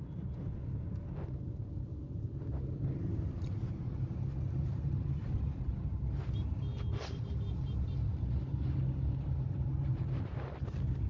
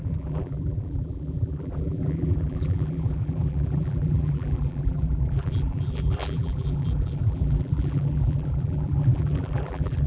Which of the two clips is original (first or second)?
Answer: first